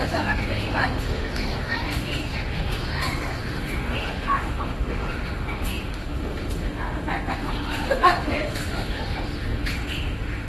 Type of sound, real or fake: fake